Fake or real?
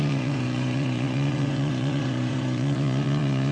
fake